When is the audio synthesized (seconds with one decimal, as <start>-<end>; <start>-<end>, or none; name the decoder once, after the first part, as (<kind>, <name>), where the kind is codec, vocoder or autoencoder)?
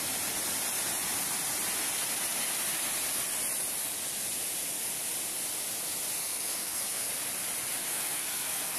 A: 6.2-7.1 (codec, SNAC); 7.9-8.8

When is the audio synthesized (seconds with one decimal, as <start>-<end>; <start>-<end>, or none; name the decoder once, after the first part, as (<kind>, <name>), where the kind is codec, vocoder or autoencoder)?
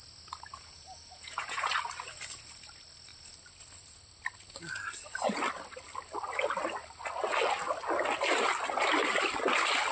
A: 0.5-1.7 (vocoder, Vocos)